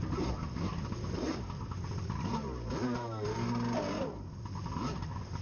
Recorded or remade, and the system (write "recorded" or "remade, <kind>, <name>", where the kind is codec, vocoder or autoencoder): recorded